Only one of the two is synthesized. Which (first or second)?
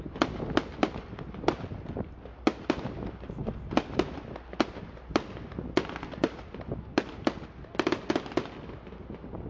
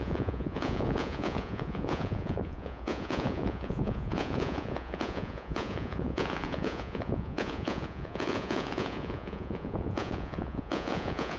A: second